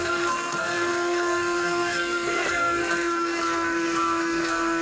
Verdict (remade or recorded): remade